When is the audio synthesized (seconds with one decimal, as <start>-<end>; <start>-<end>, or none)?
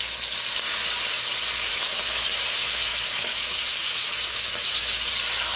1.7-5.1